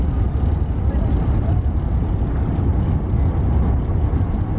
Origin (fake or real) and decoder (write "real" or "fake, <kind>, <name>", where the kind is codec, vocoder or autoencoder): real